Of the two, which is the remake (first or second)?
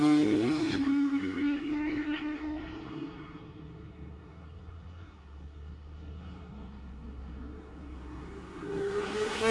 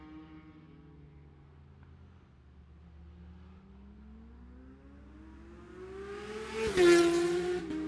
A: first